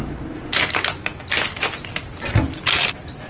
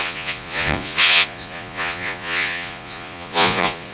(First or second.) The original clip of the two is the first